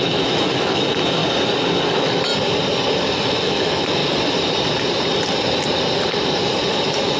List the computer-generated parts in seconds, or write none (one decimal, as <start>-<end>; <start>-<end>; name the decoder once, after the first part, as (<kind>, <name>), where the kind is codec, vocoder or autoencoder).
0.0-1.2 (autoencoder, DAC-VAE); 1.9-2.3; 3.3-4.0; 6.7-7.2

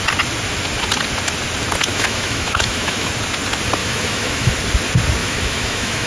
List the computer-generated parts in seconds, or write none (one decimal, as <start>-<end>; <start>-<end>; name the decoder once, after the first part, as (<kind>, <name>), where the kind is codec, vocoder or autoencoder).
1.9-3.1 (autoencoder, DAC-VAE); 3.8-4.5; 5.2-6.1

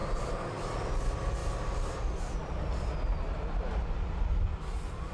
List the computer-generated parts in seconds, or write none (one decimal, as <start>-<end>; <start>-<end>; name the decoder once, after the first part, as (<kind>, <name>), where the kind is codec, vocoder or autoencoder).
none